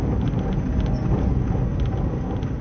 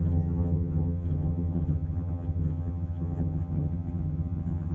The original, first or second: first